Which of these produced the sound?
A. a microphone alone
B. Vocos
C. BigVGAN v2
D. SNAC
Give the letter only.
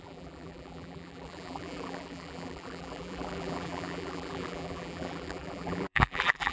C